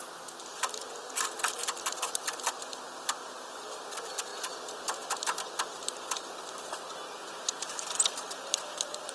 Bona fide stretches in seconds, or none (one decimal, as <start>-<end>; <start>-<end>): 0.0-9.1